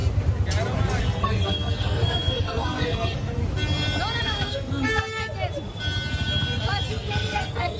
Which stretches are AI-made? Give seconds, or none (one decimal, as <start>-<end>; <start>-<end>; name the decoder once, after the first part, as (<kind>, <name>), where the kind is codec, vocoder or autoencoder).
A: 1.0-3.4 (codec, SNAC); 4.2-5.2; 6.9-7.8